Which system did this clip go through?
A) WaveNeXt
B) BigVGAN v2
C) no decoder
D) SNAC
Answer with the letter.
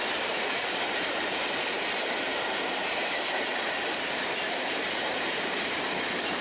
B